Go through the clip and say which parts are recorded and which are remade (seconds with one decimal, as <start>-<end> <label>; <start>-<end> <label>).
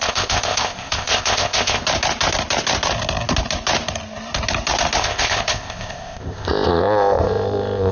0.0-1.8 remade; 1.8-5.0 recorded; 5.0-7.9 remade